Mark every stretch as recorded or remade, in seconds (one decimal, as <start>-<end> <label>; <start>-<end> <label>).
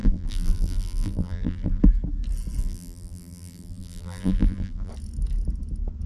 0.0-1.8 remade; 1.8-2.6 recorded; 2.6-4.9 remade; 4.9-6.1 recorded